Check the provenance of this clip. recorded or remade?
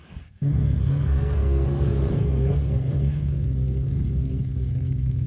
remade